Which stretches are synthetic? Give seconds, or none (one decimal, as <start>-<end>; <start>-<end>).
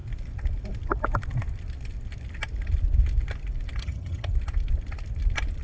3.8-4.3